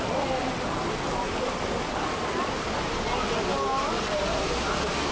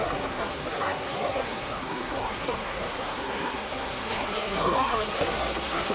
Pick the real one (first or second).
first